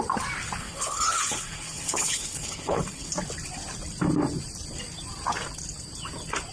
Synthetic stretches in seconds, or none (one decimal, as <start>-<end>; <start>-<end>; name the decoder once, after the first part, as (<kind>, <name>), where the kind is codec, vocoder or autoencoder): 0.6-3.1 (codec, HILCodec)